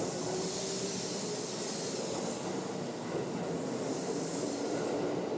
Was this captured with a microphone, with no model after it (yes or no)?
yes